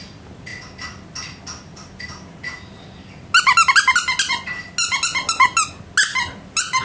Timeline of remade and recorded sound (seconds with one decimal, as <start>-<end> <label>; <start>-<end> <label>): 0.0-6.8 recorded